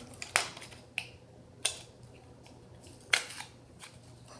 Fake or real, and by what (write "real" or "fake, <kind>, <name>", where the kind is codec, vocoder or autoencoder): real